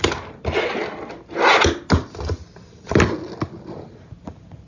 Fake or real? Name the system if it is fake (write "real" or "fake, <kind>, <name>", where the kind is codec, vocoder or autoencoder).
real